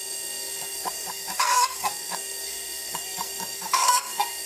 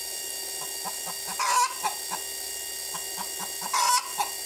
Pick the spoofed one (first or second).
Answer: first